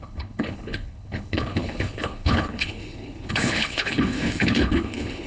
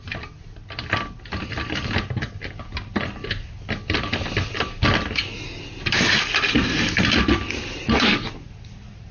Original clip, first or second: second